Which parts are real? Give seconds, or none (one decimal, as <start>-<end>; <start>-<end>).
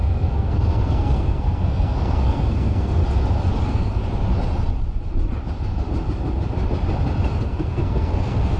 3.0-3.6; 4.0-7.4